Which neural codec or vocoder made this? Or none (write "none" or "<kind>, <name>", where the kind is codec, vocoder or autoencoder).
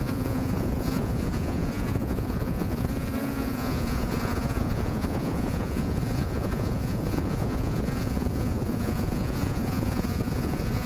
vocoder, Vocos